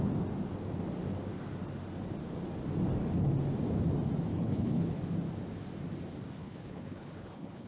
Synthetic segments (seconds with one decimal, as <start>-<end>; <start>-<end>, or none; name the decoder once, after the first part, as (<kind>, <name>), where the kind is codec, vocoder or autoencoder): 4.3-5.0 (codec, HILCodec); 6.4-7.7